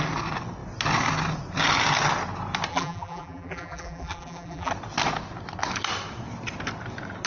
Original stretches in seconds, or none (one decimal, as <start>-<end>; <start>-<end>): 0.0-2.7; 4.7-7.3